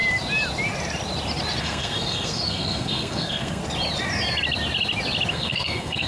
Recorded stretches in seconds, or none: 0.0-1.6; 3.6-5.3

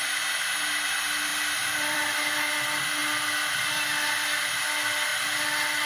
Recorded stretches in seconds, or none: 0.0-1.3; 2.0-5.9

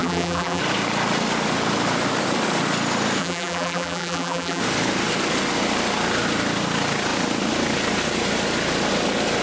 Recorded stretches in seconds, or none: 0.6-3.2; 4.6-9.4

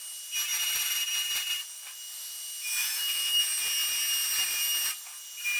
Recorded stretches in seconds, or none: 0.0-2.8; 3.4-5.6

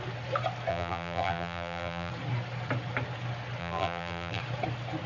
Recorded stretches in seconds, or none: 0.0-0.7; 2.1-3.6; 4.4-5.1

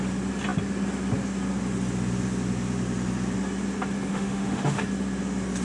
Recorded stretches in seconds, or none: 0.0-4.1; 4.8-5.6

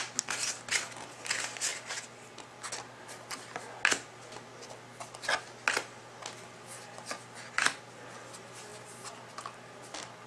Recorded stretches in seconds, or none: 0.0-10.3

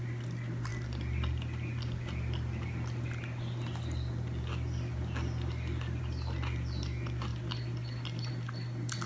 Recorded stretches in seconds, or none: 0.0-9.1